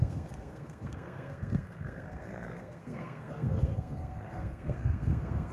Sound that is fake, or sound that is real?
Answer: fake